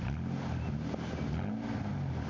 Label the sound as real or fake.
real